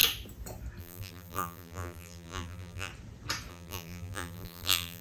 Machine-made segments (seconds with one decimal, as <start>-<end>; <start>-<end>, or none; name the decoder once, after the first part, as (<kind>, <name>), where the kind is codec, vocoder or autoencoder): 0.8-2.9 (vocoder, BigVGAN v2); 3.5-5.0